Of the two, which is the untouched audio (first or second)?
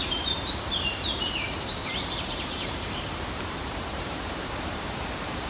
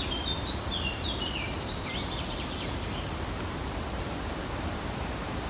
second